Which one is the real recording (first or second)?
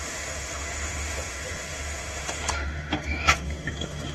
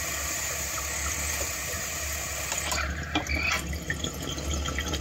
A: second